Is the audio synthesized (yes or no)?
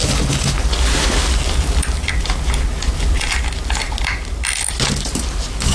no